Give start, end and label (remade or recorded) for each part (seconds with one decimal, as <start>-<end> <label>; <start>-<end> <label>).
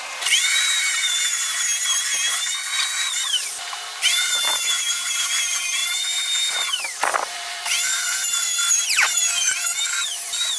0.0-1.4 remade; 1.4-3.5 recorded; 3.5-10.6 remade